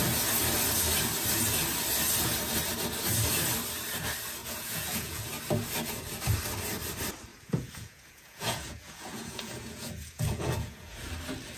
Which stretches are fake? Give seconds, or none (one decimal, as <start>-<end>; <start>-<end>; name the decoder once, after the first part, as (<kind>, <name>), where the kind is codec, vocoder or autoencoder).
4.4-5.2 (vocoder, Vocos); 7.3-11.1